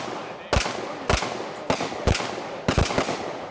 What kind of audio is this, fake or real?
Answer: real